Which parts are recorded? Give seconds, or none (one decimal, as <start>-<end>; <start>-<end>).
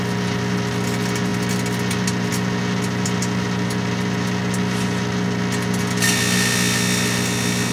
0.0-7.7